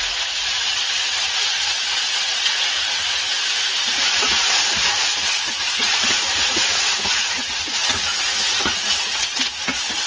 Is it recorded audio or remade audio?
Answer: remade